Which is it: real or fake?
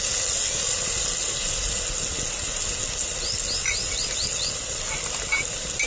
real